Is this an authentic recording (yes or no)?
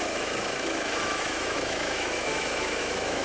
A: no